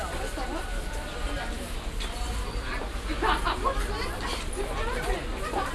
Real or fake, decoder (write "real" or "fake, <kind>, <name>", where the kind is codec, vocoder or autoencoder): real